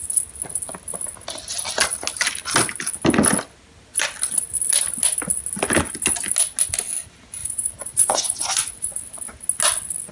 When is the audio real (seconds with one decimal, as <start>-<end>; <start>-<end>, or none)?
0.0-7.4; 8.9-10.1